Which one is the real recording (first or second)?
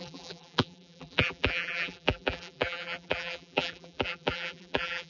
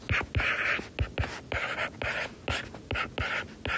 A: second